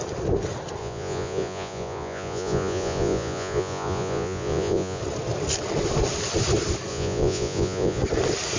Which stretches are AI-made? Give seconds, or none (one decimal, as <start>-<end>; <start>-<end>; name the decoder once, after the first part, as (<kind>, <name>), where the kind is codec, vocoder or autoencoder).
0.8-5.0 (vocoder, Vocos); 6.9-8.0